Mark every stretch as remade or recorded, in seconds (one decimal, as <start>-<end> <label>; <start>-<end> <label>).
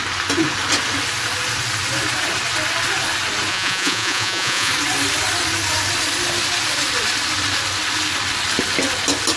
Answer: 0.0-3.5 recorded; 3.5-4.7 remade; 4.7-9.4 recorded